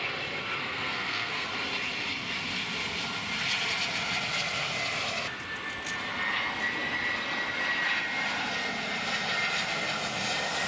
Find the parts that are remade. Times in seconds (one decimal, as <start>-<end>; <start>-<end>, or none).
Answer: 0.6-1.5